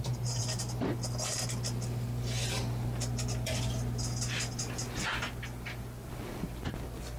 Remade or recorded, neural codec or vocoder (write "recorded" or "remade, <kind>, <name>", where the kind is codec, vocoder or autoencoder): recorded